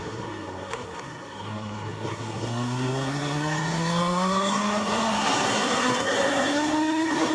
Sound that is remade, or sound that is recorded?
remade